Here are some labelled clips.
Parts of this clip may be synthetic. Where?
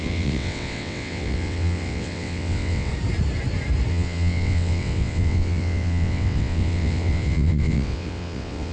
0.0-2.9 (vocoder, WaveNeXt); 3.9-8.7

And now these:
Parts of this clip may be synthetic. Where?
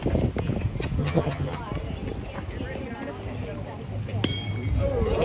1.0-1.6 (vocoder, HiFi-GAN)